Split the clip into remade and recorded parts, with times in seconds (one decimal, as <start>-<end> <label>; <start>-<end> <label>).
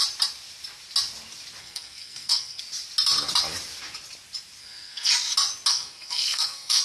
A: 0.0-1.6 recorded; 1.6-2.6 remade; 2.6-4.6 recorded; 4.6-5.1 remade; 5.1-5.7 recorded; 5.7-6.8 remade